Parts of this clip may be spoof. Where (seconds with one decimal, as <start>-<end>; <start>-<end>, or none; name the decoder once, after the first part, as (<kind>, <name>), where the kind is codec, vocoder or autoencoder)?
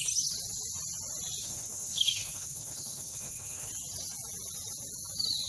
1.4-3.7 (autoencoder, DAC-VAE)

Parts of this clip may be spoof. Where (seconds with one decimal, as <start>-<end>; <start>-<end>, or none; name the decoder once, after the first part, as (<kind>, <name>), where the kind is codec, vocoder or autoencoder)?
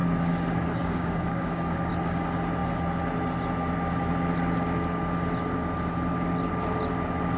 0.0-1.9 (codec, DAC)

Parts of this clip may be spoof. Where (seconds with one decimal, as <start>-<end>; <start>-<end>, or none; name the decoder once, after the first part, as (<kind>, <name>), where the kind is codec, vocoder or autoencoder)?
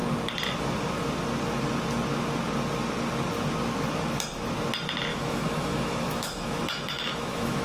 5.1-7.6 (autoencoder, DAC-VAE)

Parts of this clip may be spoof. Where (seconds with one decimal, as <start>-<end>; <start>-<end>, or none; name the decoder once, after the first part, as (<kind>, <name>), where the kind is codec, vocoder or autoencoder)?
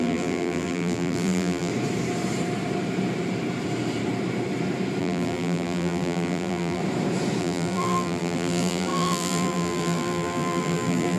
0.0-1.7 (vocoder, BigVGAN v2); 5.0-6.8; 7.4-11.2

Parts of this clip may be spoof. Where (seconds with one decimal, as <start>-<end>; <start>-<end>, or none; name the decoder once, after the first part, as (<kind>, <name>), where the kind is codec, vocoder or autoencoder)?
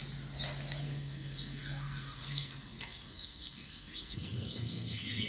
0.8-5.3 (codec, SNAC)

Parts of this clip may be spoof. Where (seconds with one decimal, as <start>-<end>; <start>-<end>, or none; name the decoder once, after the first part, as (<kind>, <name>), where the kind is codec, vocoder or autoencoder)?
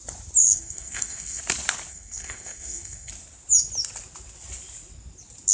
0.4-1.4 (codec, SNAC); 1.9-3.1